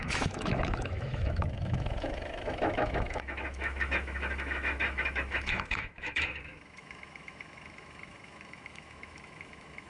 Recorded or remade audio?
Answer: remade